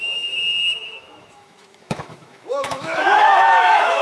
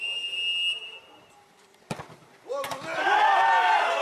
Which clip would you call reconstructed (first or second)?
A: first